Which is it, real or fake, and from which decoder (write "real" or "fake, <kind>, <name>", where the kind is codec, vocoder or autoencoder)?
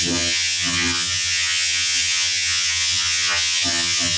fake, vocoder, HiFi-GAN